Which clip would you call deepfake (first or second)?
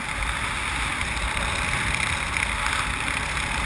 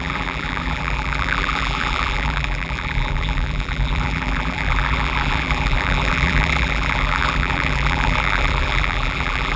second